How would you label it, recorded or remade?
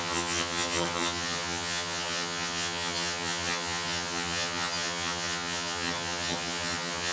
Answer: remade